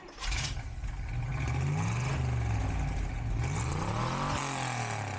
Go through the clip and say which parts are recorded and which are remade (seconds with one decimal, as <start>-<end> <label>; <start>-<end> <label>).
0.0-5.2 recorded